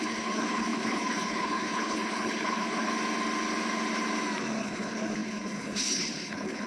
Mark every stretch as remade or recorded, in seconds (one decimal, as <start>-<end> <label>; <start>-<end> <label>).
0.0-2.9 remade; 2.9-4.6 recorded; 4.6-6.7 remade